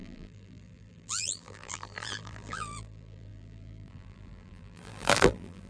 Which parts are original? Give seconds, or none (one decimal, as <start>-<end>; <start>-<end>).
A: none